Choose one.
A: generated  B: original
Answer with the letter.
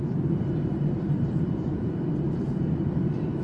A